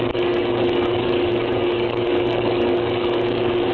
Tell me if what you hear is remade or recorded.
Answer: remade